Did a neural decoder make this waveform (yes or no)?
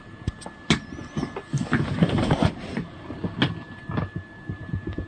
no